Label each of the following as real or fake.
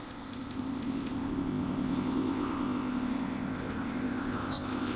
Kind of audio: fake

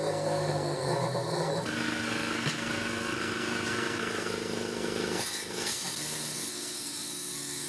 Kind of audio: fake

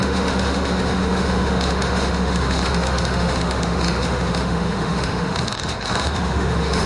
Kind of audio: fake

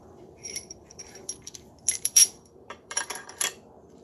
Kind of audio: fake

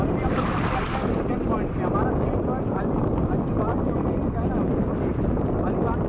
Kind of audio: real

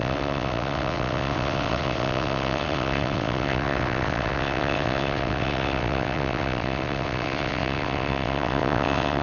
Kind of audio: fake